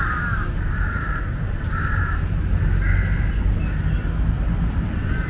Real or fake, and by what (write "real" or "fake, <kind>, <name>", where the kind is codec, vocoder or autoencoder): real